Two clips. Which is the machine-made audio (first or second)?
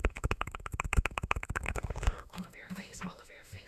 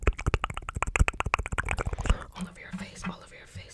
first